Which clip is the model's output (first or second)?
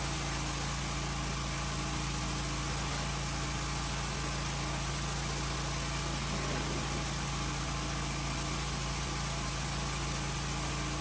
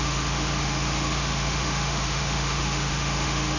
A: second